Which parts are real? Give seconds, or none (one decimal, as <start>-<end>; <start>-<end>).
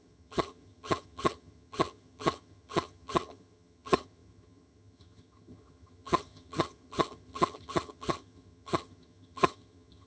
none